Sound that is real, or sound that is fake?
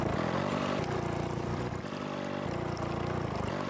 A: real